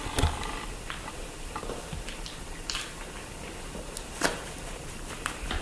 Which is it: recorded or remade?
recorded